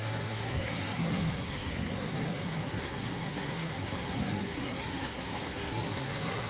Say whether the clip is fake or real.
fake